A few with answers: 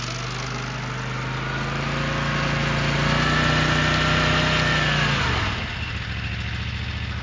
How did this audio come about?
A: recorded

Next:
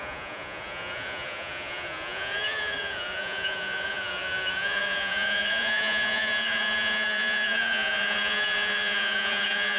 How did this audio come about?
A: remade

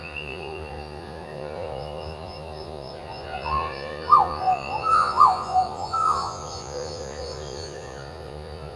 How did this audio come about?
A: remade